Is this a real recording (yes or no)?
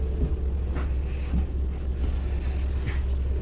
yes